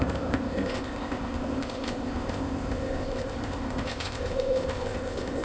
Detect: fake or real fake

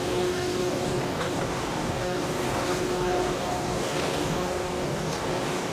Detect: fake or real fake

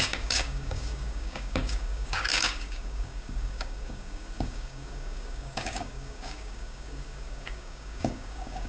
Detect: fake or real fake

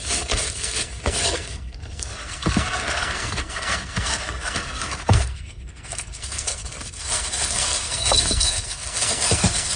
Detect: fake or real fake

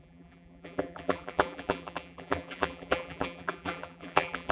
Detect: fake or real fake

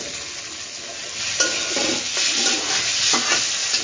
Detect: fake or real real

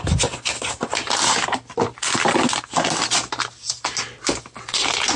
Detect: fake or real real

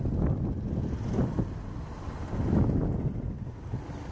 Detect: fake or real real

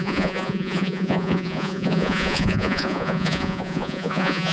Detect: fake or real fake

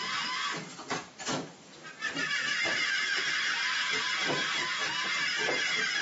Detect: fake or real real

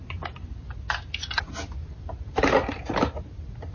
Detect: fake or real real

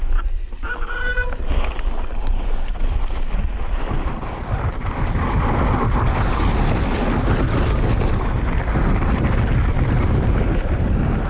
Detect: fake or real real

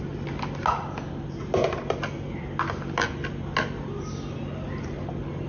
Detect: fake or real real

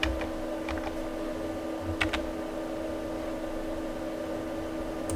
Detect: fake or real real